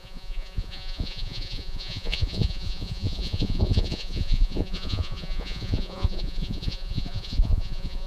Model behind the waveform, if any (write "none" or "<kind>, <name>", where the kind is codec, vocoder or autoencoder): vocoder, Vocos